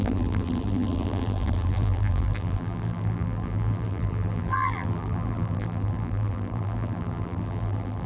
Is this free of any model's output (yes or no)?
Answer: no